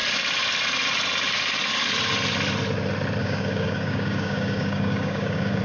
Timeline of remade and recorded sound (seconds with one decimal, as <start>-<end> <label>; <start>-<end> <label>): 0.0-3.2 recorded; 3.2-5.6 remade